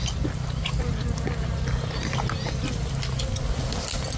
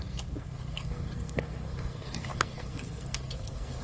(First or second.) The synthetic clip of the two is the second